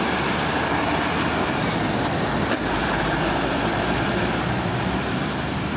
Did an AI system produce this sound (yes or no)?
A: yes